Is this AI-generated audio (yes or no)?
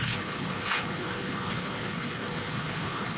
yes